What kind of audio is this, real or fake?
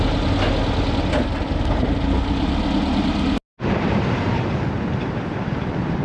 real